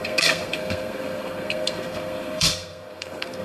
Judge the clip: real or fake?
fake